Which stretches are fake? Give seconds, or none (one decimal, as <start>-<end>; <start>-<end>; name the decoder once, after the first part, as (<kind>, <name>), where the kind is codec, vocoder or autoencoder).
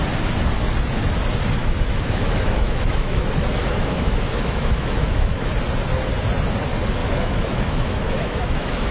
1.6-3.2 (autoencoder, DAC-VAE); 3.6-5.5; 7.0-8.9